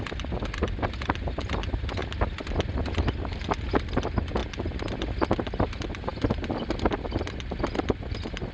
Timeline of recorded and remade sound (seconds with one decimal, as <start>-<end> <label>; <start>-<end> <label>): 0.0-8.5 recorded